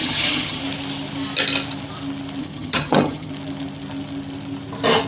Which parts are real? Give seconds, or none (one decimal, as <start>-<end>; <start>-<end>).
0.6-2.4; 3.3-5.1